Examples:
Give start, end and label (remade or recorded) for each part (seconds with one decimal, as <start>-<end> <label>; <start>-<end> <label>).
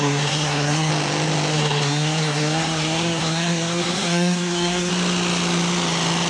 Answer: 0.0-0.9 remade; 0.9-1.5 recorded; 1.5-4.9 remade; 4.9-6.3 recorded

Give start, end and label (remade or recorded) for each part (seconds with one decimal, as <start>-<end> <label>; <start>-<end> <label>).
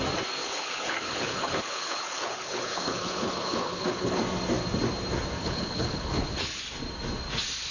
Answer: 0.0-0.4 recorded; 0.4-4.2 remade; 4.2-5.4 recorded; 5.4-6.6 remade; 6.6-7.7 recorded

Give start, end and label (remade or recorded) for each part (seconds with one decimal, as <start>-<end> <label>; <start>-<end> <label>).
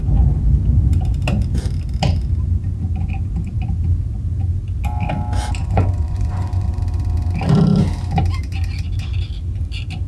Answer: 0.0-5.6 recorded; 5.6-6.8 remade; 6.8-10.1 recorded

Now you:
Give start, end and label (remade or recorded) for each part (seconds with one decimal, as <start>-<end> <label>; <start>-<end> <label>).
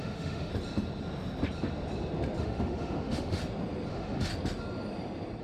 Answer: 0.0-0.5 remade; 0.5-2.4 recorded; 2.4-3.4 remade; 3.4-3.9 recorded; 3.9-4.3 remade; 4.3-5.4 recorded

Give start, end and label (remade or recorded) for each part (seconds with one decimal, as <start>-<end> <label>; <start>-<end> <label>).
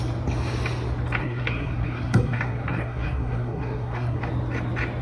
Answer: 0.0-1.2 recorded; 1.2-4.2 remade; 4.2-5.0 recorded